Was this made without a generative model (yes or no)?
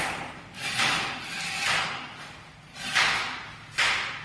yes